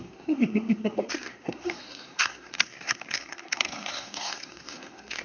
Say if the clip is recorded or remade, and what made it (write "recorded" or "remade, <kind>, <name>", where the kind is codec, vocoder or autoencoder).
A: remade, codec, SNAC